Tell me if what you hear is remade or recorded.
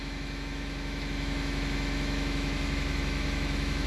remade